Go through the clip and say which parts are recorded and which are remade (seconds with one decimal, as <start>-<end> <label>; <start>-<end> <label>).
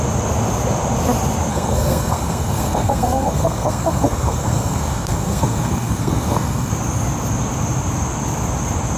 0.0-1.5 recorded; 1.5-6.7 remade; 6.7-9.0 recorded